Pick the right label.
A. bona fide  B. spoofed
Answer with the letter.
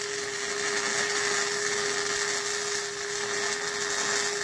A